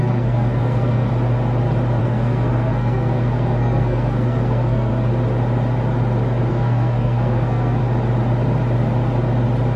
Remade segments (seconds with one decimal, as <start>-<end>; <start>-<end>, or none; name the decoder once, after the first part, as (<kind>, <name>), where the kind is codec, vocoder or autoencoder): 0.0-1.1 (codec, SNAC); 2.0-4.9; 6.5-7.8